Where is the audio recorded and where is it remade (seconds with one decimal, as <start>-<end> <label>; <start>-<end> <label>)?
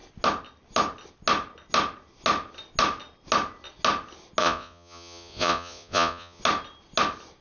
0.0-4.4 recorded; 4.4-6.4 remade; 6.4-7.4 recorded